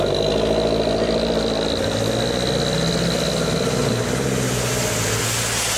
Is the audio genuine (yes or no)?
yes